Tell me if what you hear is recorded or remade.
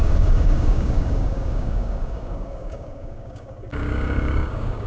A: remade